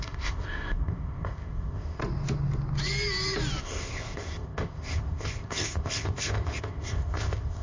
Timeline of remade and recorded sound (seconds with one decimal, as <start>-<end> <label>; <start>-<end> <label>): 0.0-2.0 remade; 2.0-3.6 recorded; 3.6-7.6 remade